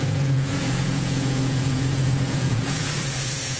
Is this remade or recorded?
remade